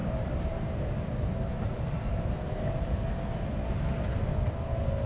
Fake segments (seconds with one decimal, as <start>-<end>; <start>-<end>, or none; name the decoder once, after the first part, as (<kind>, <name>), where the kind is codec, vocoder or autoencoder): 0.0-3.1 (vocoder, BigVGAN v2)